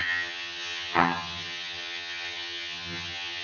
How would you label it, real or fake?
fake